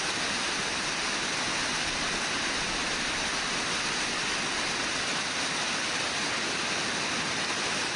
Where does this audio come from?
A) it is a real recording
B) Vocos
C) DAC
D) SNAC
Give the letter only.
A